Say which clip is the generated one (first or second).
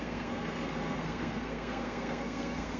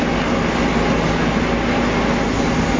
first